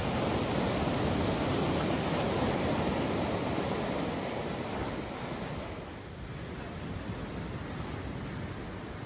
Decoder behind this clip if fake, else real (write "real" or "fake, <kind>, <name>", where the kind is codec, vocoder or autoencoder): real